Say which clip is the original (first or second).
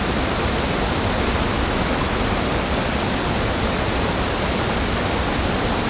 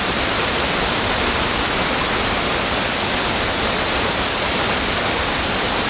first